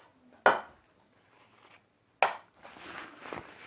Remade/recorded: recorded